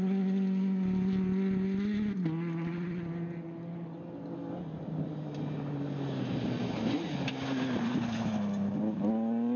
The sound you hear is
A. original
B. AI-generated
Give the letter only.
A